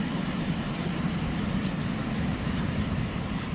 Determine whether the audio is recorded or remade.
recorded